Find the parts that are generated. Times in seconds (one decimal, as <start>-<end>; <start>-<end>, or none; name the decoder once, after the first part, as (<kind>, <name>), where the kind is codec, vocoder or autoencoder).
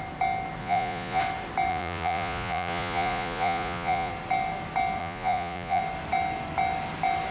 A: 0.6-1.2 (vocoder, Vocos); 1.7-4.1; 5.0-5.8